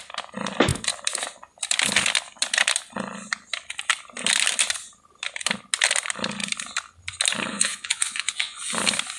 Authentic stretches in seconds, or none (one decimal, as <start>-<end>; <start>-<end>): 0.0-7.5; 8.6-9.2